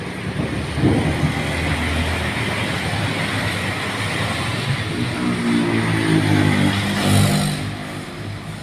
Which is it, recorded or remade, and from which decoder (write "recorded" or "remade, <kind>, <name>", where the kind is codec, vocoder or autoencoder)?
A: recorded